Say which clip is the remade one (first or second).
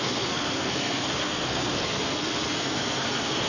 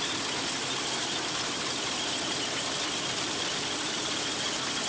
first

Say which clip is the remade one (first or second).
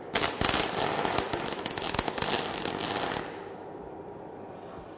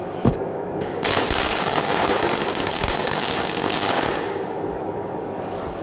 second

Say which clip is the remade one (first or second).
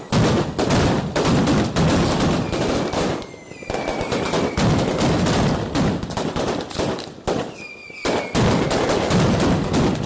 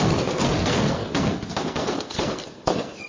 second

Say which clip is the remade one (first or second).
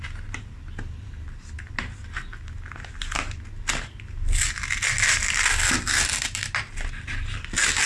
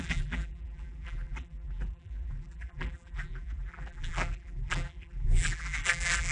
second